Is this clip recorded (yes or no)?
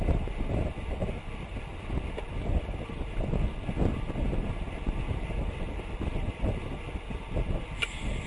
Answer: yes